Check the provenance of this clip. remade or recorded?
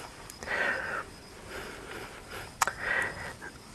recorded